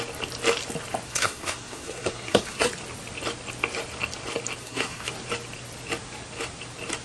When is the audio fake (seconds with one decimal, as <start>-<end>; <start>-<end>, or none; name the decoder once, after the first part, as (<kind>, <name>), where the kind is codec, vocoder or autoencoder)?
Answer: 1.1-2.7 (codec, SNAC); 4.6-5.1